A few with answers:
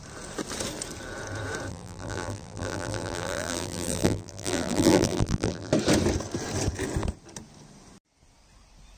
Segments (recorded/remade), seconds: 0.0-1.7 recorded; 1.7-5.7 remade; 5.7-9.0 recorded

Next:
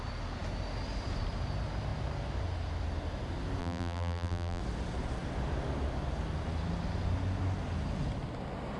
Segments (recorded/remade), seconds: 0.0-3.6 recorded; 3.6-4.6 remade; 4.6-8.8 recorded

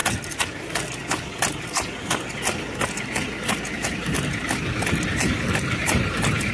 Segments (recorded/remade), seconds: 0.0-5.1 recorded; 5.1-6.5 remade

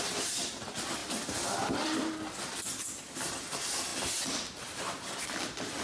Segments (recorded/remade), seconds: 0.0-5.8 recorded

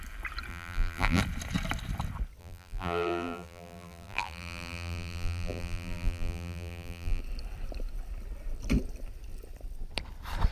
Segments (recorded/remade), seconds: 0.0-0.5 recorded; 0.5-1.2 remade; 1.2-2.4 recorded; 2.4-7.2 remade; 7.2-10.5 recorded

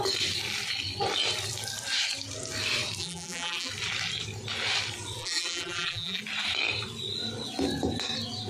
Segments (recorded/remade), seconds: 0.0-3.0 recorded; 3.0-3.7 remade; 3.7-5.2 recorded; 5.2-6.2 remade; 6.2-8.5 recorded